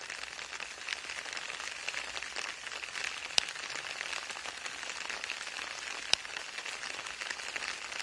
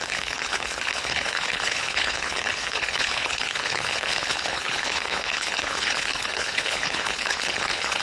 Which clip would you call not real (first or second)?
second